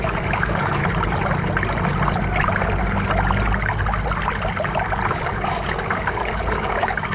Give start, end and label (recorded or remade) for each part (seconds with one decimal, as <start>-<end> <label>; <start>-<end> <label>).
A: 0.0-0.8 remade; 0.8-5.1 recorded; 5.1-7.1 remade